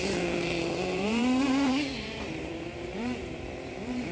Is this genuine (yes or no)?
no